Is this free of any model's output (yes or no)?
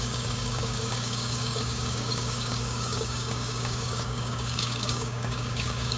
no